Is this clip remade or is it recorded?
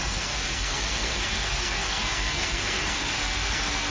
remade